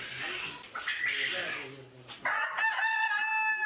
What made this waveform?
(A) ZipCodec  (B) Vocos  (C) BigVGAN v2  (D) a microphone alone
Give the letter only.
D